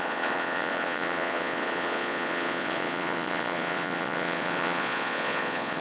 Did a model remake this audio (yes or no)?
yes